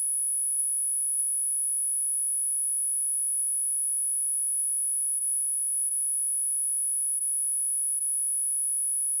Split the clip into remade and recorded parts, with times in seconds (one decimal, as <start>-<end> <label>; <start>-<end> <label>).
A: 0.0-5.2 recorded; 5.2-5.9 remade; 5.9-9.2 recorded